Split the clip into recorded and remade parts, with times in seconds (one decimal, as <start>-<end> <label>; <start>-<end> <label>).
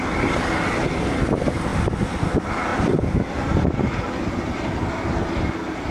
0.0-1.7 recorded; 1.7-2.3 remade; 2.3-2.7 recorded; 2.7-4.0 remade; 4.0-5.9 recorded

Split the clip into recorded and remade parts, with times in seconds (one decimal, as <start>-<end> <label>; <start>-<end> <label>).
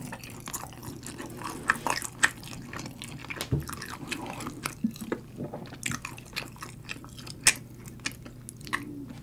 0.0-9.2 recorded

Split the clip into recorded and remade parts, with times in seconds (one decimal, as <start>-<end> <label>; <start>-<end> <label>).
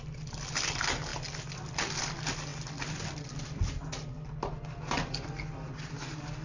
0.0-6.4 recorded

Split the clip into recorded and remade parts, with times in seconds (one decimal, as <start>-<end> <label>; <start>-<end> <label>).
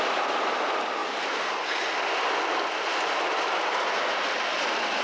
0.0-5.0 recorded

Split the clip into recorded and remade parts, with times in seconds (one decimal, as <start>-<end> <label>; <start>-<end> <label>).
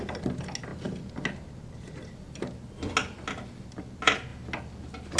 0.0-5.2 recorded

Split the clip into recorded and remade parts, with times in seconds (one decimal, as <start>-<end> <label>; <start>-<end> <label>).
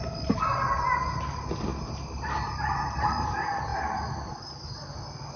0.0-5.4 recorded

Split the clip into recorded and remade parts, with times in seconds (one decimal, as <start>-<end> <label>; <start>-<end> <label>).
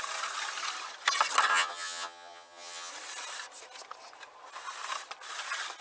0.0-1.5 recorded; 1.5-2.9 remade; 2.9-5.8 recorded